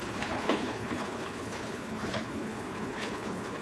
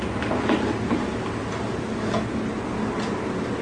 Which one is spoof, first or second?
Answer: first